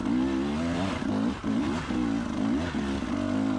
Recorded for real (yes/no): yes